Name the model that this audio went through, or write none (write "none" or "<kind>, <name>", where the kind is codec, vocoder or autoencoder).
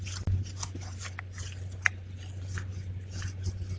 none